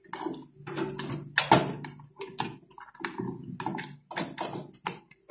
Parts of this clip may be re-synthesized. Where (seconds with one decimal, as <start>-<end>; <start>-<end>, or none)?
none